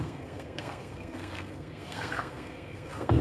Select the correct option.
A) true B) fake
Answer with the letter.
B